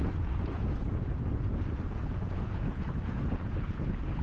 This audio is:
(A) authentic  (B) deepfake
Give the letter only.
B